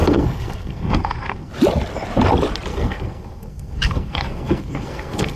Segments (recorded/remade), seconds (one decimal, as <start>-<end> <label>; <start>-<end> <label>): 0.0-1.5 remade; 1.5-2.7 recorded; 2.7-5.4 remade